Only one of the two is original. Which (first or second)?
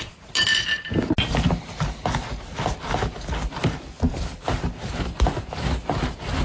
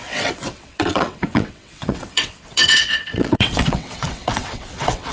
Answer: first